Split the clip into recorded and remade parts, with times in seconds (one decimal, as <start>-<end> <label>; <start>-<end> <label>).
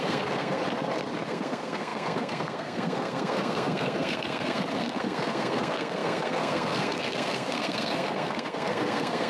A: 0.0-0.6 remade; 0.6-1.3 recorded; 1.3-9.3 remade